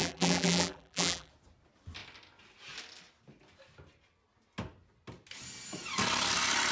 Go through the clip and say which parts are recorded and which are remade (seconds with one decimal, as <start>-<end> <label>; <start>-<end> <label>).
0.0-1.3 remade; 1.3-6.7 recorded